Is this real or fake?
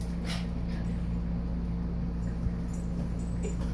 real